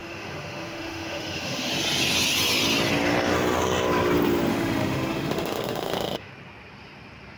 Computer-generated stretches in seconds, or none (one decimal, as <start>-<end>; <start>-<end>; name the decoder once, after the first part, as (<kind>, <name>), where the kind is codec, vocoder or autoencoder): 0.0-1.7 (autoencoder, DAC-VAE); 4.5-6.3